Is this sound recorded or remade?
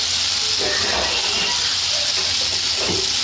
recorded